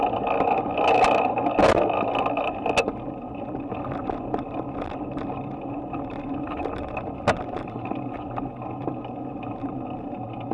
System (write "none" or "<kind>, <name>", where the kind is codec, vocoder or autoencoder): none